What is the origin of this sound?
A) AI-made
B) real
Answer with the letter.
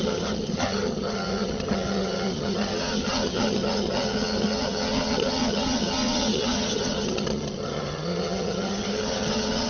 A